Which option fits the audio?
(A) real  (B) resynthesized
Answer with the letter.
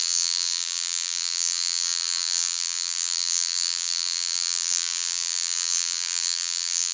B